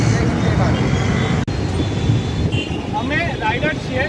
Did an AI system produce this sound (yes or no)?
no